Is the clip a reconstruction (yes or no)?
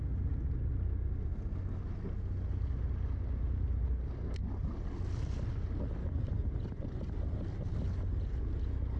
no